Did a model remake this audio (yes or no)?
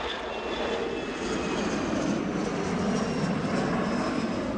no